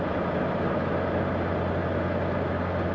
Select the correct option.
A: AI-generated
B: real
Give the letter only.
B